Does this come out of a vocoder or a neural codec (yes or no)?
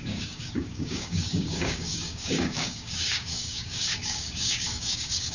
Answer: yes